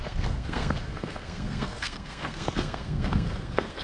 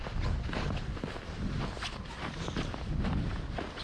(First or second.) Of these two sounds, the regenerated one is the first